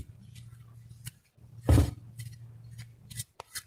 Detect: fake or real real